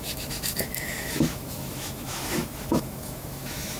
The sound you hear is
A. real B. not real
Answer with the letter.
B